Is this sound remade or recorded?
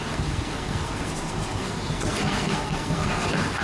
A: remade